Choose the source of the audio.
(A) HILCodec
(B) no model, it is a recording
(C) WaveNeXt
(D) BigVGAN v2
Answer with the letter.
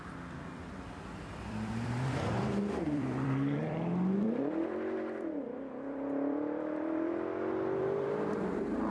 D